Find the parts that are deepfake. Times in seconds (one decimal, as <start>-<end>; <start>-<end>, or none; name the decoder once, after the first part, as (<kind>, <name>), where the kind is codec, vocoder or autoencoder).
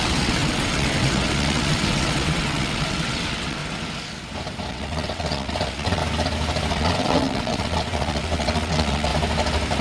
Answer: 0.0-3.6 (vocoder, WaveNeXt); 4.7-6.0; 6.7-9.1